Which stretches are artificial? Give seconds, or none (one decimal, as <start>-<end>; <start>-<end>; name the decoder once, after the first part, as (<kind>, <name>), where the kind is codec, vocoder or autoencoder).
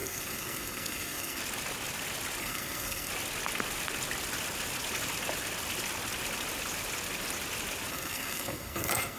0.0-1.4 (codec, SNAC); 2.4-3.1; 7.9-9.2